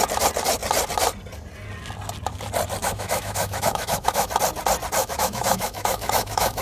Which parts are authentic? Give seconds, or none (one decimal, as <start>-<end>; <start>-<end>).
0.0-2.8; 4.3-5.0